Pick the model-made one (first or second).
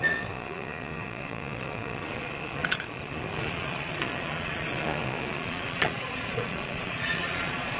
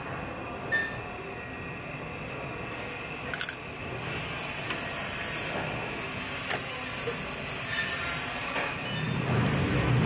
first